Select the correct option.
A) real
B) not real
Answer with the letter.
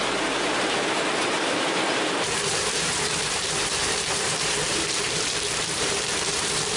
B